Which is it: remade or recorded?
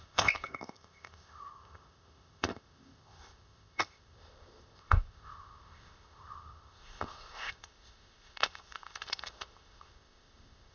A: remade